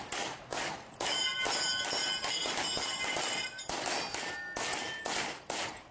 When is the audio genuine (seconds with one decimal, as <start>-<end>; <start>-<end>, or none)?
0.0-5.9